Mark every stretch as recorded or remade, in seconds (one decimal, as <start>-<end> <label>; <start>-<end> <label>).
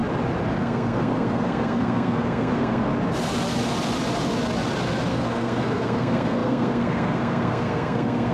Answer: 0.0-0.6 recorded; 0.6-2.9 remade; 2.9-5.1 recorded; 5.1-8.3 remade